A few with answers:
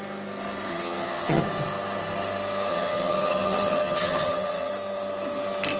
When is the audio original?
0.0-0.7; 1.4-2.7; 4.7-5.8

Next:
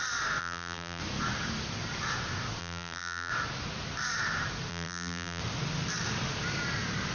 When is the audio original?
0.0-0.4; 1.0-2.6; 3.3-4.7; 5.4-7.1

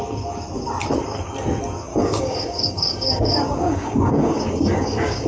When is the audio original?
0.0-1.9